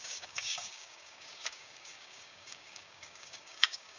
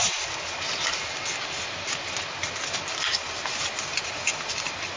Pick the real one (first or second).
second